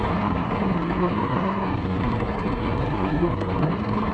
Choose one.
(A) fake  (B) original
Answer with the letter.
A